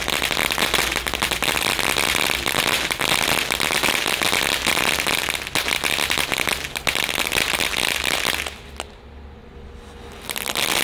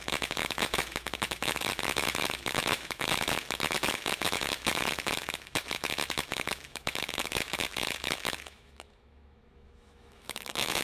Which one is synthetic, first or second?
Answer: second